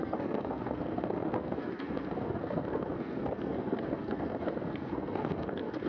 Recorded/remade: remade